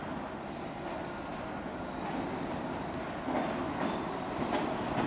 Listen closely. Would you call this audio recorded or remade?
recorded